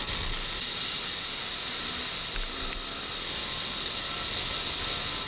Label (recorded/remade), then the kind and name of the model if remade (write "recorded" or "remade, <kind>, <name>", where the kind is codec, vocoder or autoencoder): recorded